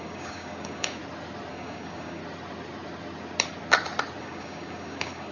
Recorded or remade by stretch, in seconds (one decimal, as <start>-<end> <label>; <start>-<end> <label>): 0.0-1.0 remade; 1.0-1.5 recorded; 1.5-2.2 remade; 2.2-4.2 recorded; 4.2-5.3 remade